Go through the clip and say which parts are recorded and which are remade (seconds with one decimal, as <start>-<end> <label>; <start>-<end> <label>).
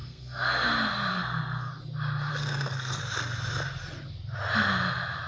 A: 0.0-0.7 remade; 0.7-1.1 recorded; 1.1-1.7 remade; 1.7-2.3 recorded; 2.3-3.0 remade; 3.0-5.3 recorded